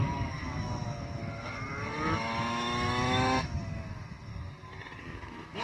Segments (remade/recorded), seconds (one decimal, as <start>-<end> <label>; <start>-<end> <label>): 0.0-4.3 remade; 4.3-5.0 recorded; 5.0-5.6 remade